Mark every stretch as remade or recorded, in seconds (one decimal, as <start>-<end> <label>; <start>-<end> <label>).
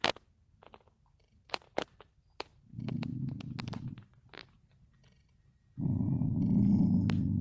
0.0-2.5 recorded; 2.5-4.7 remade; 4.7-7.4 recorded